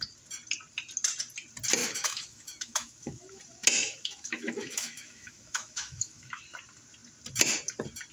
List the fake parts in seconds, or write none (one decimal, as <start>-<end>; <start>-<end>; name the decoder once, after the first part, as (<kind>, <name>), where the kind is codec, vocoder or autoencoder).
1.8-3.4 (autoencoder, DAC-VAE); 3.8-6.4